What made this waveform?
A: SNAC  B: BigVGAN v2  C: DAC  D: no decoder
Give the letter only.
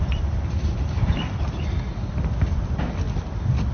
D